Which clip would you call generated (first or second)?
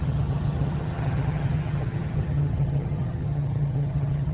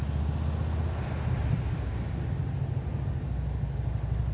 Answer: first